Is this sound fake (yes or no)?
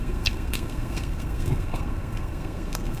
yes